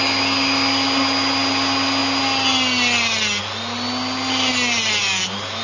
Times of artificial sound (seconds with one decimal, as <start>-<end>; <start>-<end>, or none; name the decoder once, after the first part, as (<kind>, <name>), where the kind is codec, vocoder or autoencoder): none